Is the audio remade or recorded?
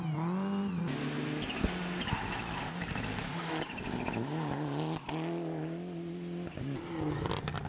recorded